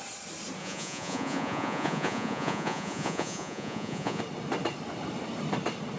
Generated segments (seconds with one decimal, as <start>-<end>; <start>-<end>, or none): 0.6-4.2